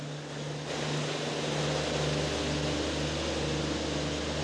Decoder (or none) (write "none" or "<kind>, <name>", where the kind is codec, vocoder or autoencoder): none